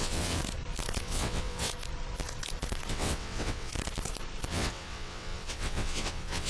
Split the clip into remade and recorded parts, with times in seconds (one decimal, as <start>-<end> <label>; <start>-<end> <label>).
0.0-0.4 remade; 0.4-1.0 recorded; 1.0-1.7 remade; 1.7-2.9 recorded; 2.9-3.7 remade; 3.7-4.5 recorded; 4.5-6.5 remade